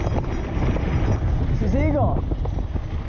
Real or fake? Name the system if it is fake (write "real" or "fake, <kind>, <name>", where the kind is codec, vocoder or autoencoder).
real